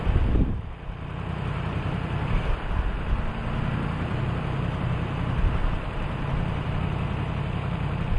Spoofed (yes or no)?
yes